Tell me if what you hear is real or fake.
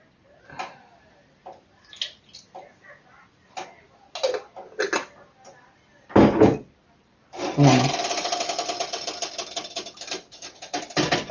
real